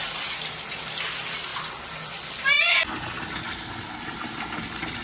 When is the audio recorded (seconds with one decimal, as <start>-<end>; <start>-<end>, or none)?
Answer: 0.0-5.0